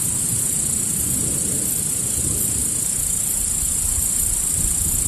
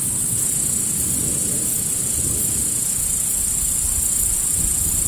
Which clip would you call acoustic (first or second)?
second